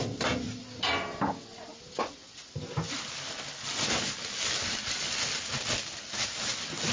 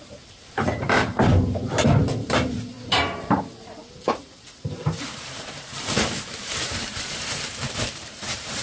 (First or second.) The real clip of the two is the first